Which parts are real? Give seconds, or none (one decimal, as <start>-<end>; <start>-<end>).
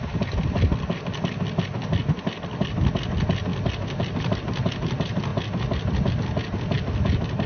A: 0.0-7.5